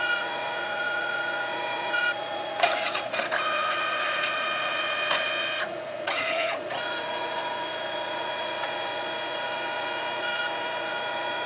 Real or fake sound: fake